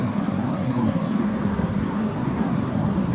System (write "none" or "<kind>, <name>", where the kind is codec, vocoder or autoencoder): codec, SNAC